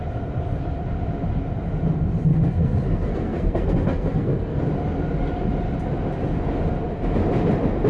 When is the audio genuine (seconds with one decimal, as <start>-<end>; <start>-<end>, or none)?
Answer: 0.0-2.3; 4.6-7.9